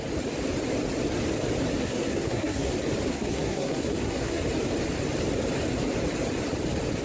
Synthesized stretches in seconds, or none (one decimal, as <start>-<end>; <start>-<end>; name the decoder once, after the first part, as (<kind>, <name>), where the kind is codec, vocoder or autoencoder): 1.8-2.7 (codec, SNAC); 3.1-4.4